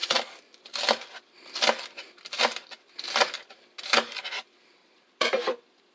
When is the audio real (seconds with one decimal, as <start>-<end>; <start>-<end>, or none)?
0.0-4.8; 5.3-5.9